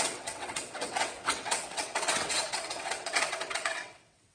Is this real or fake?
fake